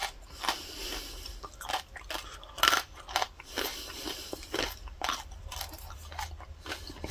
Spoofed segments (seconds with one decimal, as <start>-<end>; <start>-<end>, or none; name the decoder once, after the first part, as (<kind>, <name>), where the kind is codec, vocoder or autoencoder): 3.7-6.3 (vocoder, BigVGAN v2)